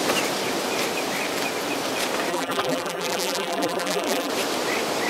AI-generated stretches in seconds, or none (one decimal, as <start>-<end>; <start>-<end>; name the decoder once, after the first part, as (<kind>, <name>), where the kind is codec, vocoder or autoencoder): 2.3-4.3 (vocoder, BigVGAN v2)